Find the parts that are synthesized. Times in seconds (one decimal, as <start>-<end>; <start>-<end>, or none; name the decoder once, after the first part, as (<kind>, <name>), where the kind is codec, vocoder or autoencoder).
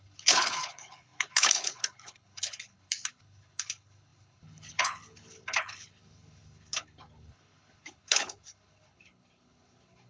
0.0-10.1 (codec, HILCodec)